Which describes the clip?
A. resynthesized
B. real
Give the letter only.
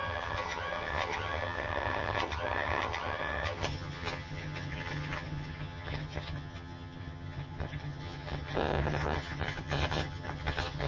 A